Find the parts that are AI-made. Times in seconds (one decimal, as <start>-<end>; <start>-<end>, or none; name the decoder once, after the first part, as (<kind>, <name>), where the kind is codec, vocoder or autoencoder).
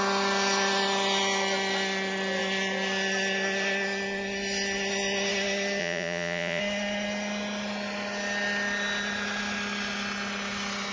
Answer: 5.8-6.6 (vocoder, Vocos)